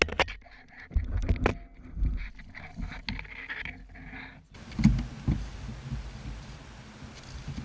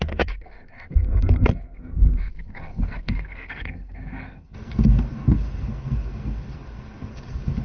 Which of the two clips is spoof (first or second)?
second